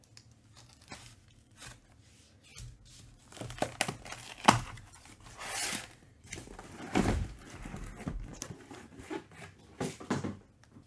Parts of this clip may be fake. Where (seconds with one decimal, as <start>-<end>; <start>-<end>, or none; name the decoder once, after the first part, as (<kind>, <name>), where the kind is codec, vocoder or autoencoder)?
5.6-7.0 (vocoder, BigVGAN v2); 8.3-10.1